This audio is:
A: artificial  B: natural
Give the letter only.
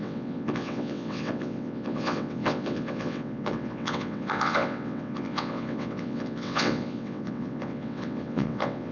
A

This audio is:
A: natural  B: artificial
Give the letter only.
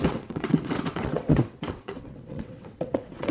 B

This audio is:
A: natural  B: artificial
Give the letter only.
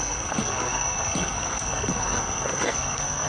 B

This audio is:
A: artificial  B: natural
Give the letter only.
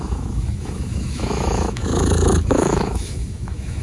A